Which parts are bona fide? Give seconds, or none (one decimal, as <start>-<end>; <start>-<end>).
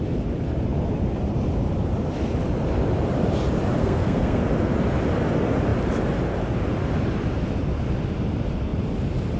0.0-3.8; 4.4-9.4